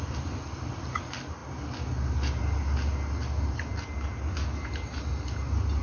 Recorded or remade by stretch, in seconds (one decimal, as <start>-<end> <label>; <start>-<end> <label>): 0.0-5.8 recorded